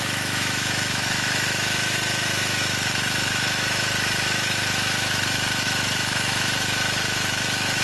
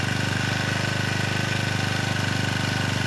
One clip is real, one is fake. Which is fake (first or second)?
first